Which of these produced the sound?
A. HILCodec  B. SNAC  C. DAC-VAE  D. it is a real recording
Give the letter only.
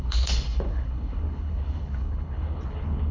A